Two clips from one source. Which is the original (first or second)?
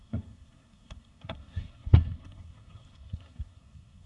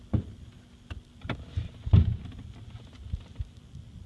second